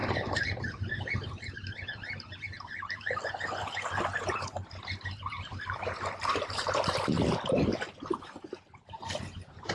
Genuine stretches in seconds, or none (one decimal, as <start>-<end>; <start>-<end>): none